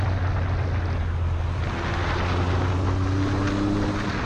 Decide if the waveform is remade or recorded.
recorded